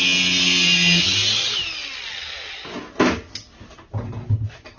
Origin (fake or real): real